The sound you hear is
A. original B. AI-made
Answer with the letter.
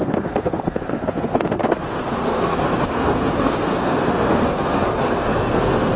B